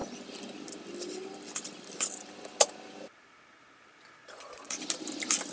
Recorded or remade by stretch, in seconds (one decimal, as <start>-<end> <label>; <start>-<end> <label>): 0.0-4.2 recorded; 4.2-4.8 remade; 4.8-5.5 recorded